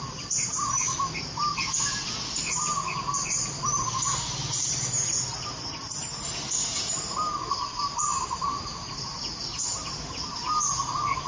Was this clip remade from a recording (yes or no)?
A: no